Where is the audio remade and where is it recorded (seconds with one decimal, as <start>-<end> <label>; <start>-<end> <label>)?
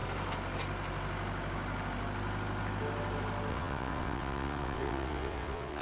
0.0-3.5 recorded; 3.5-5.8 remade